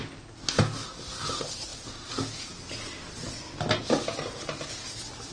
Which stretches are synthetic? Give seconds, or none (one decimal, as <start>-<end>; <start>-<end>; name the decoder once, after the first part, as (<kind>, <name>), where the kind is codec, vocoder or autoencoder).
none